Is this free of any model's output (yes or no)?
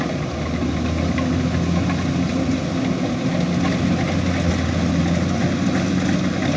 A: yes